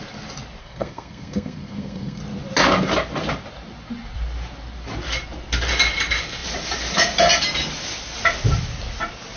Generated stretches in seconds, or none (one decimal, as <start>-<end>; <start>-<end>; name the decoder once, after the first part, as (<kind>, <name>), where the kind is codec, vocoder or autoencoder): 0.6-2.2 (codec, SNAC)